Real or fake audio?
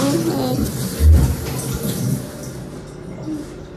real